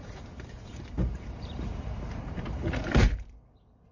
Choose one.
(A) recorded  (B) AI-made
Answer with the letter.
B